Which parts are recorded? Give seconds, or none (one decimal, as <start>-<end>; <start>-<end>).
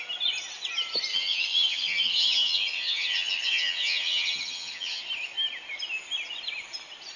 0.0-1.1; 5.0-7.2